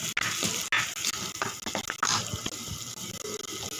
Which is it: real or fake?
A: real